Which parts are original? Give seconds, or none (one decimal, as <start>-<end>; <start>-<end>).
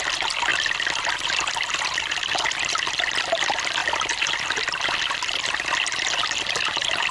0.0-7.1